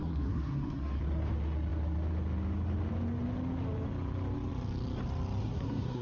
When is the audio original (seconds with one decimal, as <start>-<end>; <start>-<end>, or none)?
1.0-5.4